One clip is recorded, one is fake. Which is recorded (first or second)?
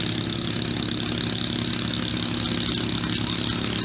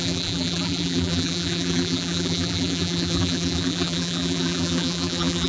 first